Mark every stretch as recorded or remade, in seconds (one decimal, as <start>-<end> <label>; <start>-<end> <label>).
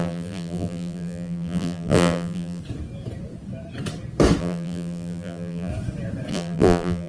0.0-2.6 remade; 2.6-4.4 recorded; 4.4-5.7 remade; 5.7-6.3 recorded; 6.3-7.1 remade